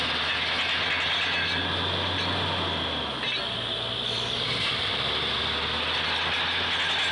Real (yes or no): yes